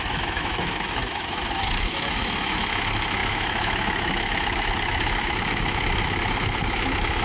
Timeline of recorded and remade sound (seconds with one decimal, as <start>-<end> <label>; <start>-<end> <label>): 0.0-7.2 remade